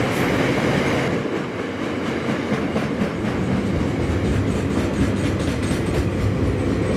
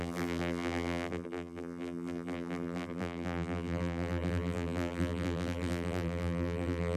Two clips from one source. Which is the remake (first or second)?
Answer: second